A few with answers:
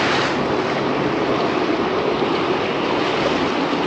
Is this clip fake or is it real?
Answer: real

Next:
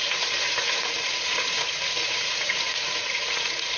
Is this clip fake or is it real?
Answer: fake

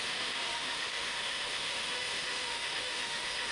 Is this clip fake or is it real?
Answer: fake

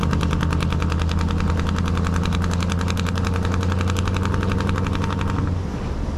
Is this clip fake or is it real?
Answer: real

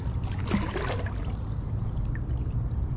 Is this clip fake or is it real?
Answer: real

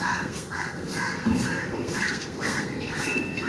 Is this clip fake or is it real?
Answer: fake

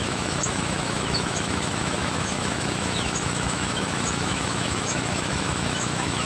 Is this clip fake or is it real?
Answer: fake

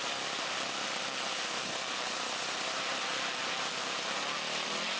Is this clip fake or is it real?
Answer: real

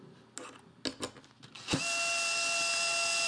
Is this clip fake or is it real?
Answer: real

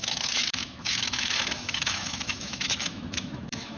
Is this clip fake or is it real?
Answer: fake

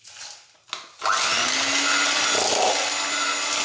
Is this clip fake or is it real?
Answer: real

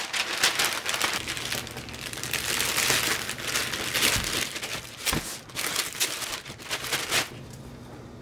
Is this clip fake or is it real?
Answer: real